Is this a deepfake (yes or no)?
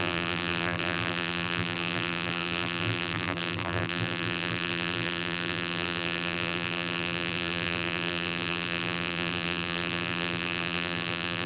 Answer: yes